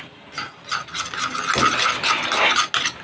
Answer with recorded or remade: recorded